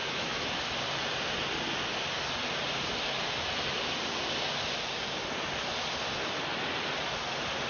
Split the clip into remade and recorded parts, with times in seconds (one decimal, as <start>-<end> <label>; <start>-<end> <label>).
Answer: 0.0-0.6 remade; 0.6-7.7 recorded